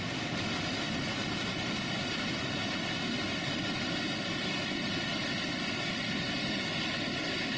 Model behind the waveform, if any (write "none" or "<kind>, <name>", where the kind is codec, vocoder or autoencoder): none